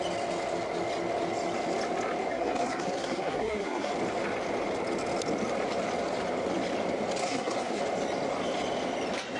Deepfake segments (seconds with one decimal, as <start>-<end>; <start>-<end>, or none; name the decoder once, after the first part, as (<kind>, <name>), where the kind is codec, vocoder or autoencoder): 2.3-3.9 (codec, SNAC); 7.2-7.8